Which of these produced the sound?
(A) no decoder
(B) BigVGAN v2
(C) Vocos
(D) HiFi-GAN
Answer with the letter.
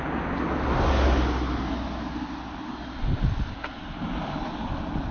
A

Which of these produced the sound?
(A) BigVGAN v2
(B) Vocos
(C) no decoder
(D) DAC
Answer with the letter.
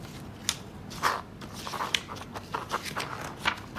C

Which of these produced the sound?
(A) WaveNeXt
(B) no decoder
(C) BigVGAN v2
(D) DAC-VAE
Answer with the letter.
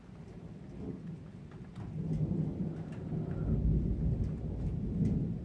B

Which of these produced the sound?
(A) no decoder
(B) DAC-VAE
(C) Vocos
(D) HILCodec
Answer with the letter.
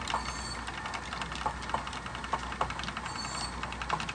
A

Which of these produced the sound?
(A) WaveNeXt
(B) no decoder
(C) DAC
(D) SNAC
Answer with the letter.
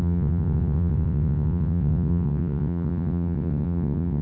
A